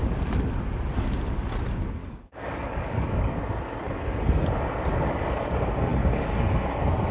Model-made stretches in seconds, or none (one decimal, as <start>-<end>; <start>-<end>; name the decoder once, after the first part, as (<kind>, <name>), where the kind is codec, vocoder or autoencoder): 2.0-3.4 (codec, DAC); 4.9-5.4